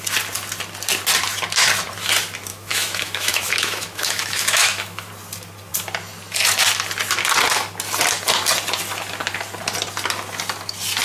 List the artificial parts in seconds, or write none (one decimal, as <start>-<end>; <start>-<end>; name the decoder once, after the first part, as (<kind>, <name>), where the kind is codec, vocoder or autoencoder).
2.5-5.1 (autoencoder, DAC-VAE)